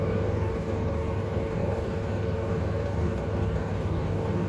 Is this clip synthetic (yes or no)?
yes